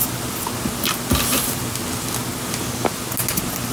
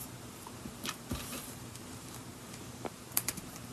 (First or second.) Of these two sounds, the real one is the first